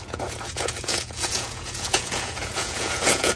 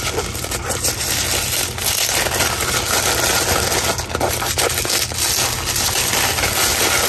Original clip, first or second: second